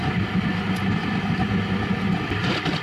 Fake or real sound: real